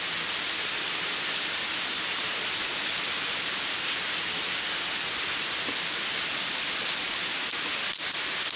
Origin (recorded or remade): recorded